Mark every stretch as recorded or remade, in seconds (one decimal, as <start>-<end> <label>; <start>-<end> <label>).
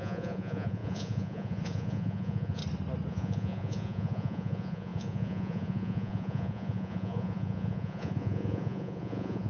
0.0-2.6 remade; 2.6-3.1 recorded; 3.1-9.5 remade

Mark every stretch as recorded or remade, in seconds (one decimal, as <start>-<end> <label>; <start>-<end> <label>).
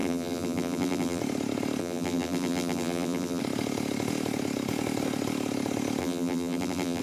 0.0-1.2 remade; 1.2-1.8 recorded; 1.8-3.4 remade; 3.4-6.0 recorded; 6.0-7.0 remade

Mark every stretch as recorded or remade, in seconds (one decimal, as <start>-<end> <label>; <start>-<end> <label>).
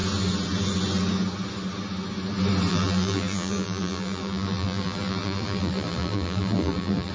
0.0-2.7 recorded; 2.7-7.1 remade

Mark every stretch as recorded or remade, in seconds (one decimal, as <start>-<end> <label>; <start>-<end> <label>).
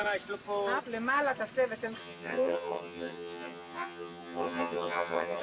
0.0-2.0 recorded; 2.0-5.4 remade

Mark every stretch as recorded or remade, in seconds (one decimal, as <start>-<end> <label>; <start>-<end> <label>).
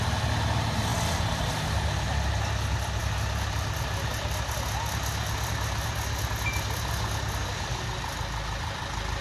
0.0-9.2 recorded